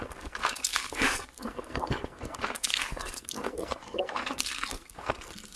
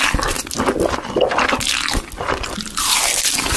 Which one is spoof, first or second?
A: first